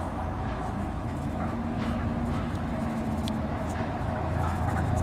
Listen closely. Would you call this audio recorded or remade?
remade